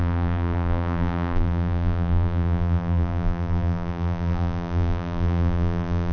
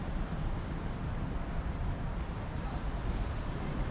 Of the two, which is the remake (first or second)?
first